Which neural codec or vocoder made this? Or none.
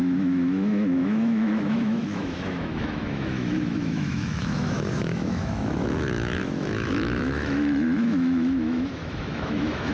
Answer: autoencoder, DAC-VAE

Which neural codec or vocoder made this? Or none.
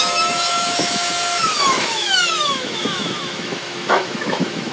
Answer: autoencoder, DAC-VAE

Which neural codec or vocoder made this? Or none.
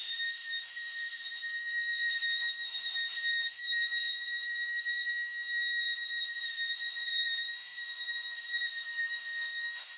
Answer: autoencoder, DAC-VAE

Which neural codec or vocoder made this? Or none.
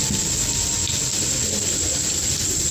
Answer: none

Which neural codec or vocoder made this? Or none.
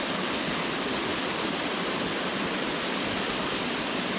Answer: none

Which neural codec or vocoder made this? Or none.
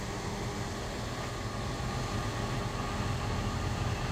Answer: none